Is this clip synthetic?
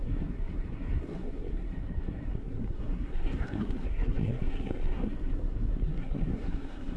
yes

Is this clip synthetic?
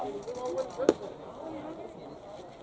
no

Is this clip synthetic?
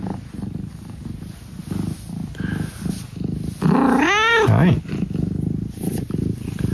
no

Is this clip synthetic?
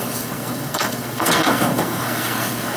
yes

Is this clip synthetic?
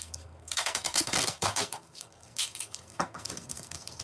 yes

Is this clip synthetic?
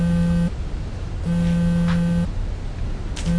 no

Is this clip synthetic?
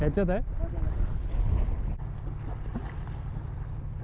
no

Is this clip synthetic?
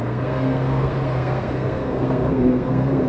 yes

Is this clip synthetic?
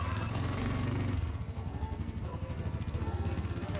yes